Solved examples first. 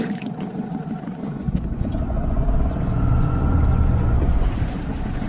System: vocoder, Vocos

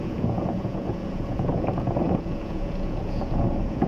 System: vocoder, Vocos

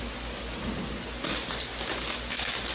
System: none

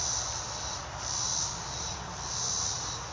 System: none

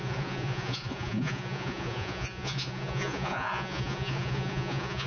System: vocoder, Vocos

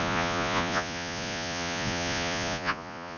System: vocoder, Vocos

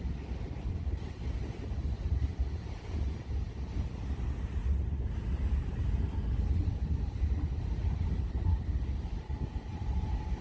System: none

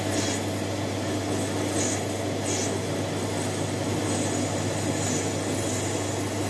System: none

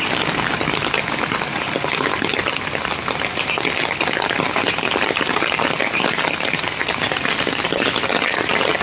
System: none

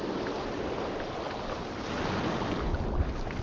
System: none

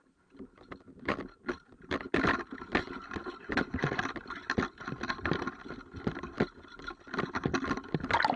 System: none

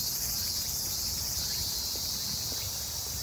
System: none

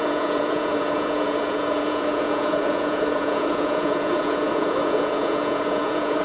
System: vocoder, Vocos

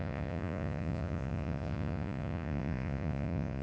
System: vocoder, Vocos